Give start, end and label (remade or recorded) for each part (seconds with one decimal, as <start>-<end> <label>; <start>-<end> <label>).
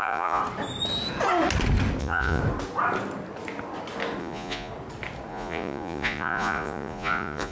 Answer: 0.0-0.4 remade; 0.4-2.0 recorded; 2.0-2.4 remade; 2.4-4.2 recorded; 4.2-4.7 remade; 4.7-5.3 recorded; 5.3-7.5 remade